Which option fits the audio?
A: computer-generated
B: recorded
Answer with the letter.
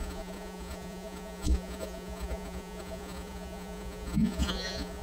A